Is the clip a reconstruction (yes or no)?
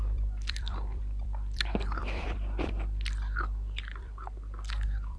yes